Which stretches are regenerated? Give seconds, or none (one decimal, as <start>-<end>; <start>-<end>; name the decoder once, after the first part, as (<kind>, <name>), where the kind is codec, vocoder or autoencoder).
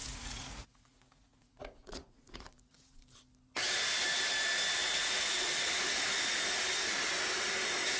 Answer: 0.0-3.0 (vocoder, Vocos); 4.8-5.5